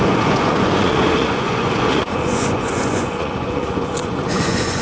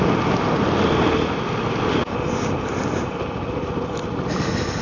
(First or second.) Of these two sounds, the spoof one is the first